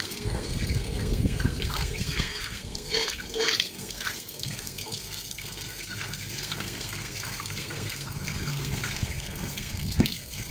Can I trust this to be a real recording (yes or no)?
no